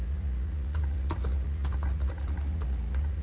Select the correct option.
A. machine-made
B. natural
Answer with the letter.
A